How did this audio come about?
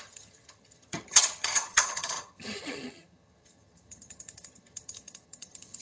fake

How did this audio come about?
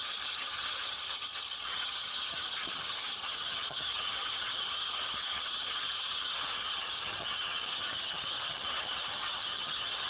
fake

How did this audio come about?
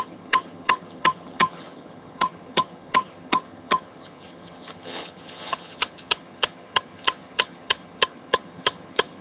fake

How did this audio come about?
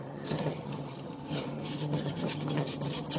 fake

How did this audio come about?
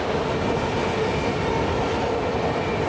real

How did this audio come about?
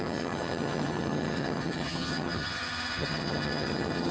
fake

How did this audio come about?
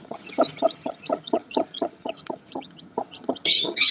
fake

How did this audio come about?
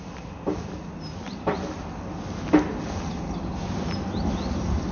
real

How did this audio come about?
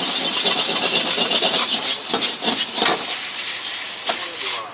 real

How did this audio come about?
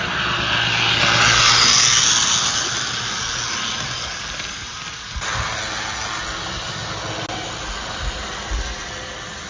real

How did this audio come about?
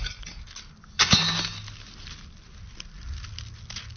real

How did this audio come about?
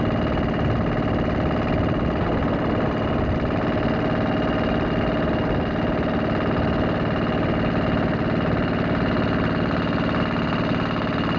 real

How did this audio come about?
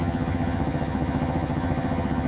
fake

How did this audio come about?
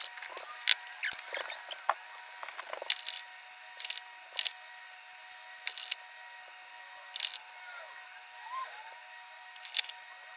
real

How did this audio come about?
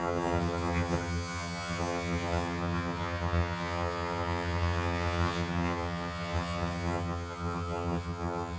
fake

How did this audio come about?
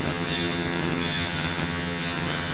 fake